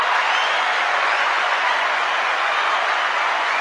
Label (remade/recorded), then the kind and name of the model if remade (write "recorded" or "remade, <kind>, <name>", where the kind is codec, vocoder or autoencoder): remade, vocoder, Vocos